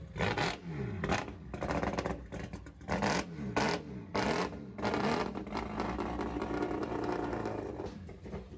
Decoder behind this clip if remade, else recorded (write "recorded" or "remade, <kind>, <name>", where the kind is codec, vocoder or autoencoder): recorded